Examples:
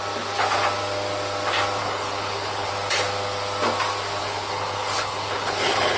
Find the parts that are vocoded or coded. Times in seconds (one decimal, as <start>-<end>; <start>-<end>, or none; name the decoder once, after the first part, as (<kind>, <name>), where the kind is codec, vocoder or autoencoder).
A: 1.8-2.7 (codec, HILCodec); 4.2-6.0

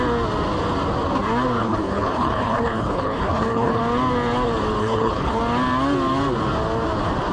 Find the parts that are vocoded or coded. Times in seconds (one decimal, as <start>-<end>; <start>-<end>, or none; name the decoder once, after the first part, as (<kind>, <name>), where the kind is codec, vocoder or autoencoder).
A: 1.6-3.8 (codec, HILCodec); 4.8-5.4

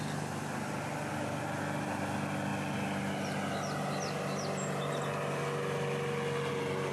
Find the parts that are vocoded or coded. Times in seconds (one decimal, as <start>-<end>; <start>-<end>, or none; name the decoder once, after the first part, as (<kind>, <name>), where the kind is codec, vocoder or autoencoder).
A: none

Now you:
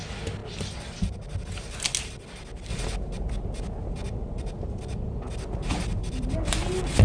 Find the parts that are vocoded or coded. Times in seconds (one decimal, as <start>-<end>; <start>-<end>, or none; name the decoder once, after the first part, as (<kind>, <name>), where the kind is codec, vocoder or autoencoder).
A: none